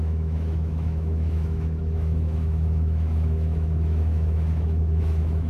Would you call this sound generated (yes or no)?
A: yes